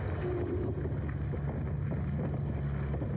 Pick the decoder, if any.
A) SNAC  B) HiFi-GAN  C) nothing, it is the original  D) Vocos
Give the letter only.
C